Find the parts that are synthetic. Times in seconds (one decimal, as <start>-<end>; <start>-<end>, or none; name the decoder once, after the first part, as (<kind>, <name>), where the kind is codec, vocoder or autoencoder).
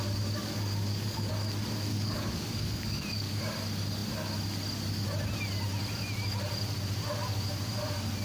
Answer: 0.4-1.3 (codec, DAC); 1.9-3.4